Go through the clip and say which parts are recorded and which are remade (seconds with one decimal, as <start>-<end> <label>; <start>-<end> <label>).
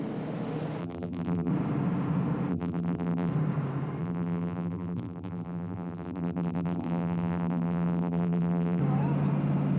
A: 0.0-0.8 recorded; 0.8-1.5 remade; 1.5-2.5 recorded; 2.5-3.3 remade; 3.3-4.0 recorded; 4.0-8.8 remade; 8.8-9.8 recorded